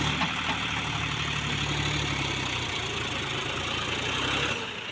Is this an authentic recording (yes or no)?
yes